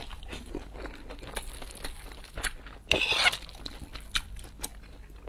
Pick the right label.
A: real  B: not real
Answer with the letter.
A